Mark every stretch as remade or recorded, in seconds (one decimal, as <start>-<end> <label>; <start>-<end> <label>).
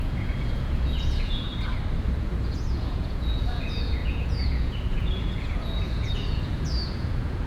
0.0-1.5 remade; 1.5-2.2 recorded; 2.2-7.5 remade